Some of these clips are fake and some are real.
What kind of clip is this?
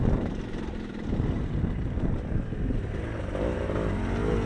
real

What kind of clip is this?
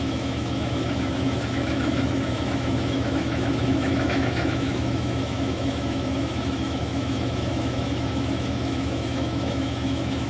fake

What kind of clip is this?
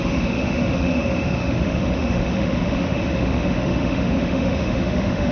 fake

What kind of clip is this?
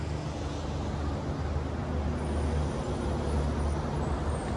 real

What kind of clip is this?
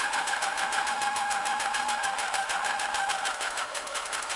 fake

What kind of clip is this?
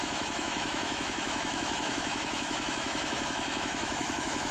fake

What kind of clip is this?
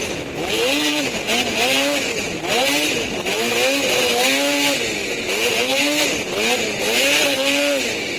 real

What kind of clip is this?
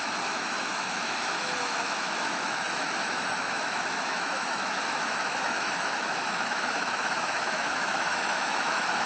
fake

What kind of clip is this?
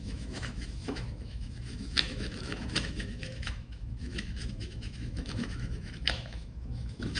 fake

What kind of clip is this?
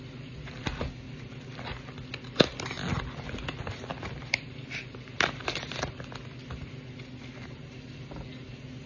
real